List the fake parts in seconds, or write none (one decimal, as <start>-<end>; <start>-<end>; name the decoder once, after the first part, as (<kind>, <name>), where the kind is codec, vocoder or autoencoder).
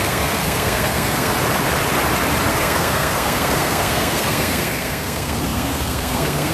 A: 0.0-1.3 (codec, SNAC); 2.5-6.5